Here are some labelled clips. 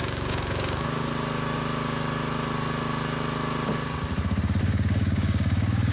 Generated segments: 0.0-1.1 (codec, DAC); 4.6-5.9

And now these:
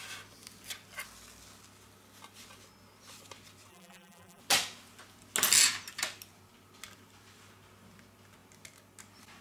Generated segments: 3.7-4.4 (vocoder, BigVGAN v2)